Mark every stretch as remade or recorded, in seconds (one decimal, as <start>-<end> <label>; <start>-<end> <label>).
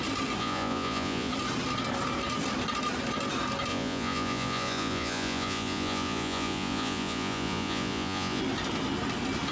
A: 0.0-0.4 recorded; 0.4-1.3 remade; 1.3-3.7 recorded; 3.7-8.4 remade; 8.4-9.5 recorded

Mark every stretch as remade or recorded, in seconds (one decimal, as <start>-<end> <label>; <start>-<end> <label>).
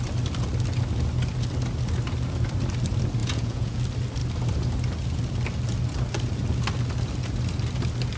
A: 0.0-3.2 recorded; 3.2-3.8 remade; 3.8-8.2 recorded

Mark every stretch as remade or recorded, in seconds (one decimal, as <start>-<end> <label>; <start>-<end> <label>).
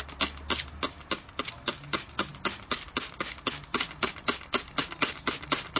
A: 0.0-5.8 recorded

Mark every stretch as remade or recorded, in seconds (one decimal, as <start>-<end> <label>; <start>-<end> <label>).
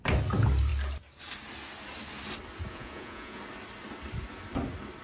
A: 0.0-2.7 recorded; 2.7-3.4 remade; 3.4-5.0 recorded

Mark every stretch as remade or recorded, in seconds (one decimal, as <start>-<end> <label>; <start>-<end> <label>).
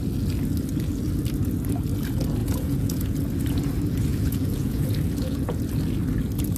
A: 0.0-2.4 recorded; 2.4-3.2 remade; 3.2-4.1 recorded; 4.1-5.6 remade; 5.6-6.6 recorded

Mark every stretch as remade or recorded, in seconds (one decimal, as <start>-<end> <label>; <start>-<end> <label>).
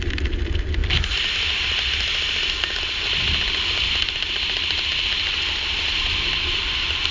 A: 0.0-7.1 recorded